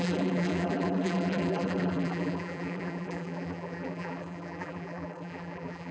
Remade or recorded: remade